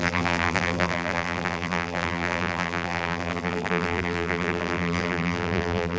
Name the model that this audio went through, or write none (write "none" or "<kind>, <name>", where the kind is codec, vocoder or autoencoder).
vocoder, BigVGAN v2